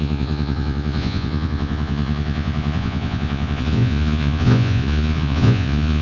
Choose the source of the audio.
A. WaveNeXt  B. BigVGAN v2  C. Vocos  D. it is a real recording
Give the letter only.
C